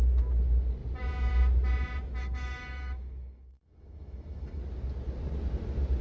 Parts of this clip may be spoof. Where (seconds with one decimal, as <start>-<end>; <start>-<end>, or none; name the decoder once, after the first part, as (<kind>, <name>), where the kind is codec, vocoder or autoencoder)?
2.2-4.6 (autoencoder, DAC-VAE)